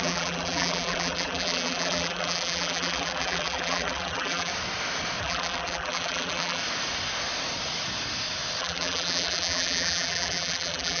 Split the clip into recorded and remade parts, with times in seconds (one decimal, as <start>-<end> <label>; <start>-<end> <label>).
0.0-4.5 remade; 4.5-5.2 recorded; 5.2-6.6 remade; 6.6-8.6 recorded; 8.6-11.0 remade